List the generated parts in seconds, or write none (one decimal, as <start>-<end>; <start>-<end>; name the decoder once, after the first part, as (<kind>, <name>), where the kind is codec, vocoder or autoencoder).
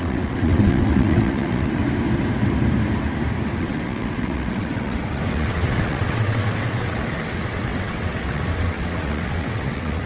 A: 0.0-1.8 (vocoder, WaveNeXt); 3.6-10.1